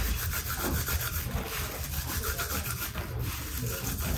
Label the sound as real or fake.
real